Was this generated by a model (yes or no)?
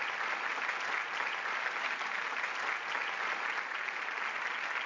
no